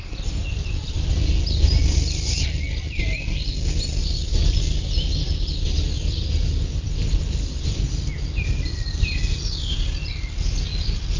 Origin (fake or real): real